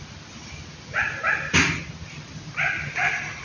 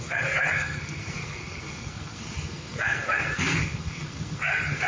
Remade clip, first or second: second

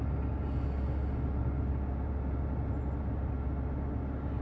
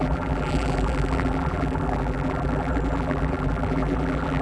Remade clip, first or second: second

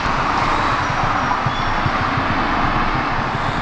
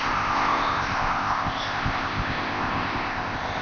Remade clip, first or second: second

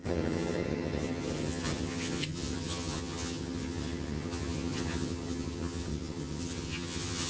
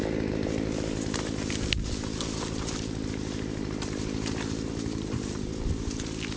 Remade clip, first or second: first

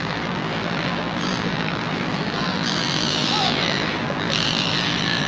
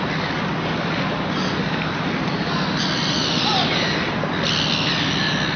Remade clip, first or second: first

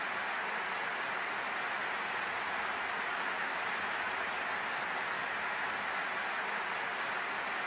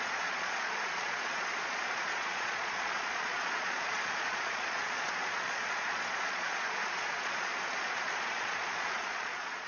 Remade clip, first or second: second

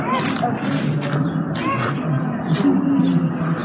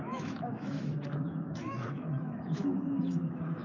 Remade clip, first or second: second